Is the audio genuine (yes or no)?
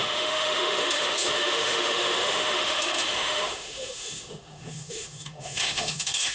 no